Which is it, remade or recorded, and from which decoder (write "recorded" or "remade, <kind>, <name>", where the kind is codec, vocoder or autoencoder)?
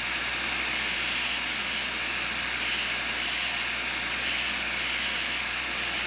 recorded